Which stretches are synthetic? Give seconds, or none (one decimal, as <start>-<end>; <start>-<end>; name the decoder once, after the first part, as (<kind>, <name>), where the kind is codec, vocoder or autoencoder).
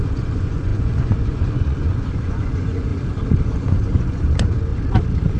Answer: 0.0-2.9 (vocoder, Vocos); 3.4-4.7